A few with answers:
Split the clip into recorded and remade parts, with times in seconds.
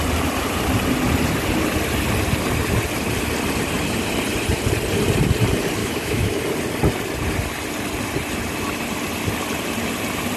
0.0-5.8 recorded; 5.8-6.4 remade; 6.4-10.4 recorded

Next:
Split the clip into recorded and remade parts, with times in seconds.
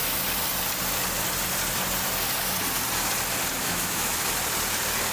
0.0-3.6 recorded; 3.6-4.3 remade; 4.3-5.1 recorded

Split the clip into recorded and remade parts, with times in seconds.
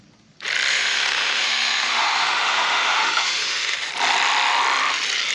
0.0-0.7 recorded; 0.7-3.9 remade; 3.9-5.3 recorded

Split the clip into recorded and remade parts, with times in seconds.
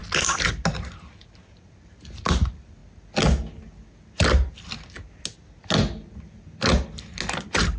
0.0-7.8 recorded